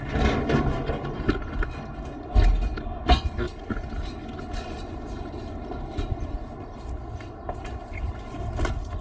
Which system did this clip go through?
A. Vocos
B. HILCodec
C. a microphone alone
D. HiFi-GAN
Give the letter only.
C